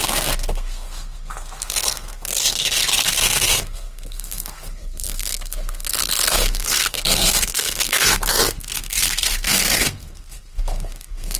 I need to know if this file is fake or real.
fake